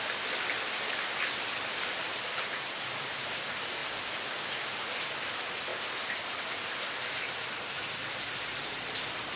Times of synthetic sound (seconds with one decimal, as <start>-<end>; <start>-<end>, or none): none